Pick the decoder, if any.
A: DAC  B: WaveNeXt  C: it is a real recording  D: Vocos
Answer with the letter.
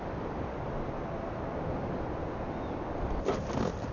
C